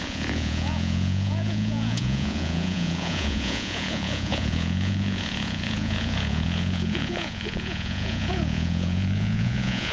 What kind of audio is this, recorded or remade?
remade